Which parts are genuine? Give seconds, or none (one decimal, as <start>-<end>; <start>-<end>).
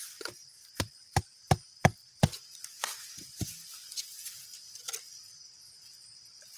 0.0-6.6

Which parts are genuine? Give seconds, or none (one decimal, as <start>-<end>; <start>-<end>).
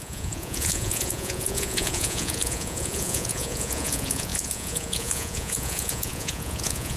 none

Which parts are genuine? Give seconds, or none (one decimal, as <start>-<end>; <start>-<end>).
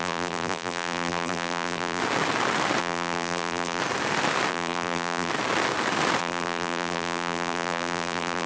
2.0-2.8; 3.8-4.5; 5.3-6.2